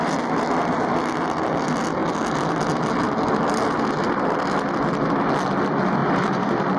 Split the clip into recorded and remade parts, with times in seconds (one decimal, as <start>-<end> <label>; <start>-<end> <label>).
0.0-6.0 recorded; 6.0-6.8 remade

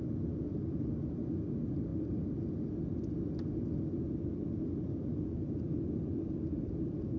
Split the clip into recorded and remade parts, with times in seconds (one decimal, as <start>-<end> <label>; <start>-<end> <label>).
0.0-7.2 recorded

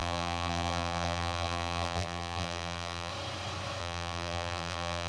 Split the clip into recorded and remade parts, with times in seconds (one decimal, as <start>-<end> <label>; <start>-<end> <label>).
0.0-3.1 remade; 3.1-3.8 recorded; 3.8-5.1 remade

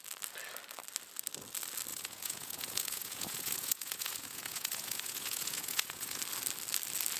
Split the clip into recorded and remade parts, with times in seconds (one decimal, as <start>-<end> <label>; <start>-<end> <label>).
0.0-1.9 recorded; 1.9-6.2 remade; 6.2-7.2 recorded

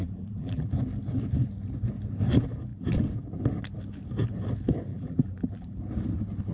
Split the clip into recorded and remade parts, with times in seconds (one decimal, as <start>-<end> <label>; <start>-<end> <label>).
0.0-0.7 remade; 0.7-4.9 recorded; 4.9-5.8 remade; 5.8-6.5 recorded

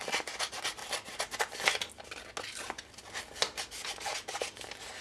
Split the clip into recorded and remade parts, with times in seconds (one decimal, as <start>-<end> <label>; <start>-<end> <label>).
0.0-5.0 recorded